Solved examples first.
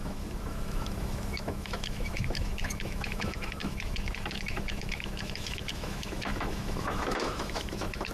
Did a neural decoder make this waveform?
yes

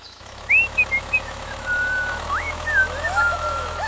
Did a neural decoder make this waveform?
yes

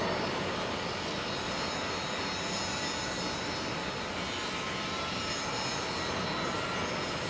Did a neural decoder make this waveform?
no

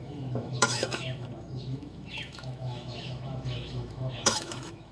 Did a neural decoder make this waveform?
yes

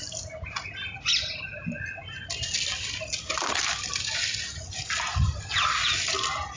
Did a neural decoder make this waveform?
no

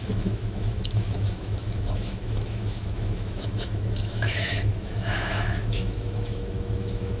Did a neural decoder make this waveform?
yes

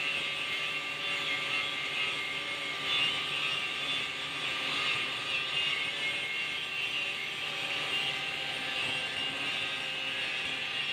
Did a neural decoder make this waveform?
no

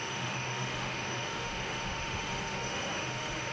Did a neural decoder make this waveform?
yes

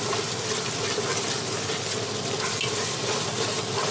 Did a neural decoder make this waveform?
no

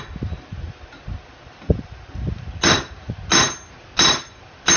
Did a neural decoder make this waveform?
no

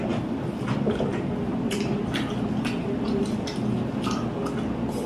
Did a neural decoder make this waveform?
no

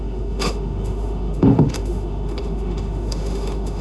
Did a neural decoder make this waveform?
yes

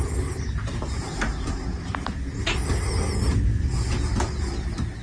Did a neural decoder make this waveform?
no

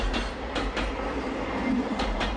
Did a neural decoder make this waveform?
no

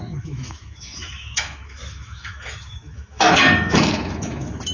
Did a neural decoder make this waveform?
yes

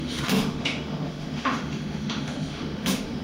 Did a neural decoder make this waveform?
yes